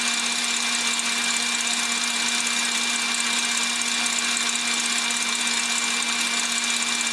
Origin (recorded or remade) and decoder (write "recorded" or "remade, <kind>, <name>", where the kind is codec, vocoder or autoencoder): recorded